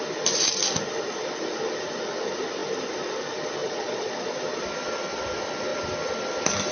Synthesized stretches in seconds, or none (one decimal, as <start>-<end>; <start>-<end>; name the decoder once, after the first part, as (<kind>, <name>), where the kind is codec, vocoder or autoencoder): 3.6-4.3 (vocoder, Vocos)